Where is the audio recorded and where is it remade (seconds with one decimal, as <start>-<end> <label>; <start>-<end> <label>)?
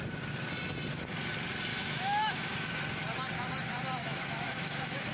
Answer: 0.0-1.7 recorded; 1.7-2.8 remade; 2.8-4.0 recorded; 4.0-5.1 remade